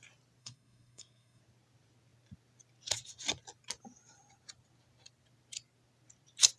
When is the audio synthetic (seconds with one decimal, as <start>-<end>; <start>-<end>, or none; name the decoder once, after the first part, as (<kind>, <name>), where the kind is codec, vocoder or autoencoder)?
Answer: 0.4-1.4 (codec, SNAC)